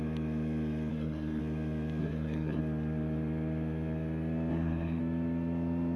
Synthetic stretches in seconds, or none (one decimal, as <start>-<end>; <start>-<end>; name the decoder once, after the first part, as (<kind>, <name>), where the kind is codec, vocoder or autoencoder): 0.9-1.4 (codec, SNAC); 2.0-2.6; 4.5-5.0